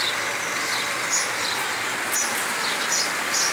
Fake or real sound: real